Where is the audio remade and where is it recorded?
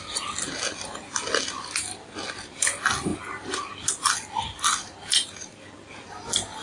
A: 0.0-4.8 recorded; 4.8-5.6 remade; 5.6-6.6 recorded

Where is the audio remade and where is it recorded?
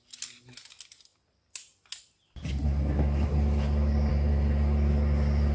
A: 0.0-5.5 recorded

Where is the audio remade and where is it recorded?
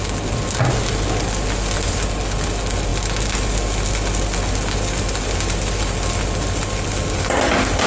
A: 0.0-7.9 recorded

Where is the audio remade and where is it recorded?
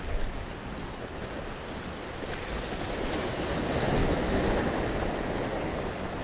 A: 0.0-4.0 recorded; 4.0-4.7 remade; 4.7-6.2 recorded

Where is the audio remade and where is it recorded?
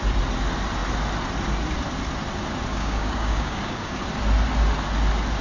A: 0.0-2.7 recorded; 2.7-4.0 remade; 4.0-5.4 recorded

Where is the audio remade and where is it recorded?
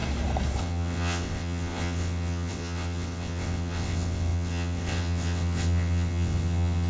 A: 0.0-0.6 recorded; 0.6-6.9 remade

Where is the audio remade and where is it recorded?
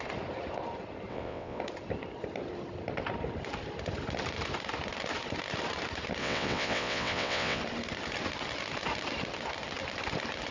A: 0.0-1.1 recorded; 1.1-1.6 remade; 1.6-6.2 recorded; 6.2-7.6 remade; 7.6-10.5 recorded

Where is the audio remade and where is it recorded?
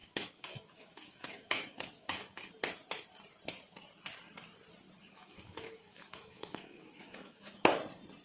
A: 0.0-2.5 remade; 2.5-5.1 recorded; 5.1-7.6 remade; 7.6-8.2 recorded